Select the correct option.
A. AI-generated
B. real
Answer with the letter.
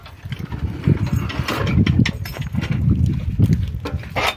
B